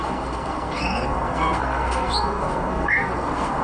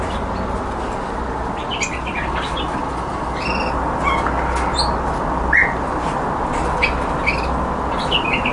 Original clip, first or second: second